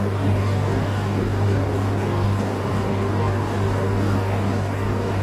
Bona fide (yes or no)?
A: no